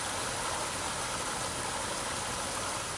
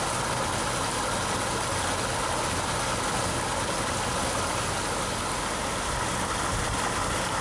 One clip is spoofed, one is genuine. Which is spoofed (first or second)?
first